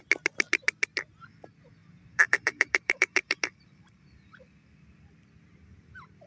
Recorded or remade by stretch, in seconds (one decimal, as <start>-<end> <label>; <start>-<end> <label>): 0.0-1.8 recorded; 1.8-3.4 remade; 3.4-6.3 recorded